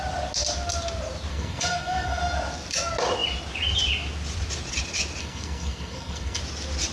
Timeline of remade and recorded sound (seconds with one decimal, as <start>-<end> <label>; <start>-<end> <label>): 0.0-1.3 recorded; 1.3-2.2 remade; 2.2-5.2 recorded; 5.2-6.4 remade; 6.4-6.9 recorded